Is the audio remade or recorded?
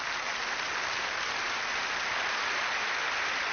recorded